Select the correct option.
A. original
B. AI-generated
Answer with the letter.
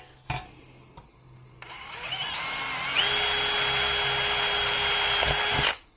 A